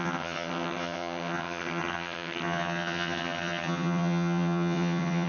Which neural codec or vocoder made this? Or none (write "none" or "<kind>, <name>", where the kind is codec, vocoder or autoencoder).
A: vocoder, HiFi-GAN